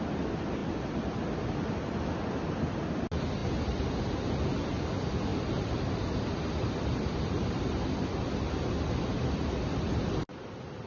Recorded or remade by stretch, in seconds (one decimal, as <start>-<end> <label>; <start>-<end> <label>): 0.0-5.3 recorded; 5.3-7.6 remade; 7.6-10.9 recorded